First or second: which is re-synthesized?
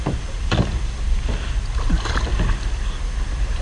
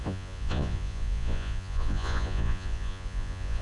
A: second